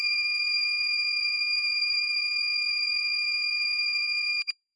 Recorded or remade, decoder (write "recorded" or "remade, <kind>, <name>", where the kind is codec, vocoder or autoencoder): remade, vocoder, BigVGAN v2